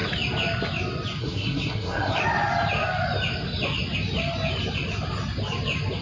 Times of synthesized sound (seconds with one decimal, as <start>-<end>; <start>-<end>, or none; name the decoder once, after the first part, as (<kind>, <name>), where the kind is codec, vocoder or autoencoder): 1.2-2.2 (codec, SNAC)